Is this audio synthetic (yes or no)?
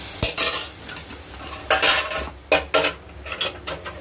no